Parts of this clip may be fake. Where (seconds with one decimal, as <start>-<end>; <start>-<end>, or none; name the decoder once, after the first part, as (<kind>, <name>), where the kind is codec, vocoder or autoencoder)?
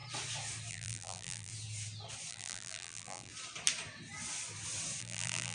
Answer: 0.7-1.5 (vocoder, BigVGAN v2); 2.3-3.3; 5.0-5.5